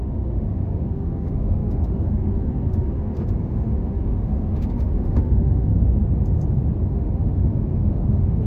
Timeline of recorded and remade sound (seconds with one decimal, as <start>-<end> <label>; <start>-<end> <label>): 0.0-5.7 remade; 5.7-6.9 recorded; 6.9-8.5 remade